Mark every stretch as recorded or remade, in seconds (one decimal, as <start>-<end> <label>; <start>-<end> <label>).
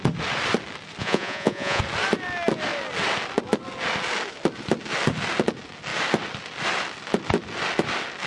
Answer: 0.0-1.0 recorded; 1.0-1.8 remade; 1.8-8.3 recorded